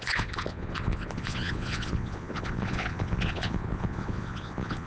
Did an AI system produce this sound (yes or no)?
yes